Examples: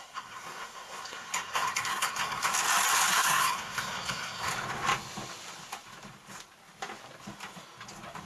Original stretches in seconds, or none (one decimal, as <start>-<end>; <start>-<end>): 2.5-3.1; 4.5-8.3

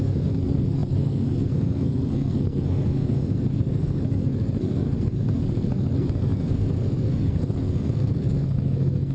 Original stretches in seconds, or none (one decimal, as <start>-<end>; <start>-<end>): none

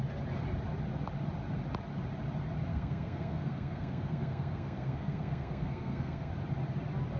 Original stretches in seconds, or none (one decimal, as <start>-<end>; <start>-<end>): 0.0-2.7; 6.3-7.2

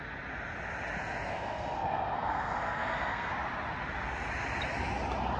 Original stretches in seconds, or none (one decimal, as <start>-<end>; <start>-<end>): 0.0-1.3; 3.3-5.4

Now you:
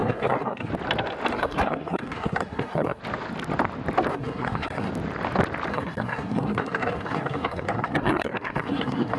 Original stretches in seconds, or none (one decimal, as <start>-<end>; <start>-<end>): 0.7-1.3; 3.0-4.1; 4.9-5.7

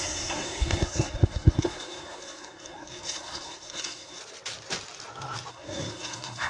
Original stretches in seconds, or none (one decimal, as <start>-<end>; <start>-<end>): 4.2-5.5